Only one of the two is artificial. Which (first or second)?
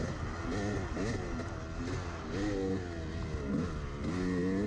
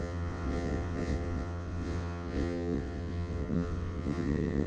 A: second